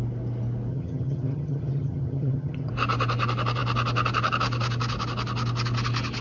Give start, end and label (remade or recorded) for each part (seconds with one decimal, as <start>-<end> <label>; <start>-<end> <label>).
0.0-0.7 recorded; 0.7-2.7 remade; 2.7-6.2 recorded